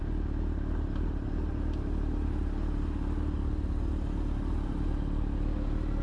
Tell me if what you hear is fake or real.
real